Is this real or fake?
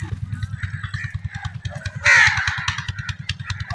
real